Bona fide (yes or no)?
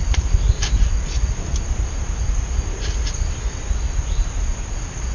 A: yes